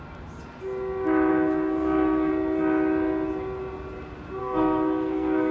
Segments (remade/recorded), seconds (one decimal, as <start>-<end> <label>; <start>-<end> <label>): 0.0-1.3 recorded; 1.3-2.3 remade; 2.3-4.4 recorded; 4.4-5.5 remade